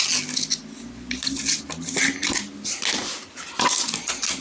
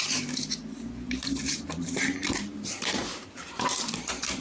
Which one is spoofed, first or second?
second